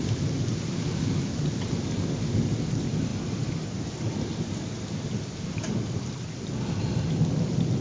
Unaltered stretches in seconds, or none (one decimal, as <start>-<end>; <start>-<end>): 0.0-7.8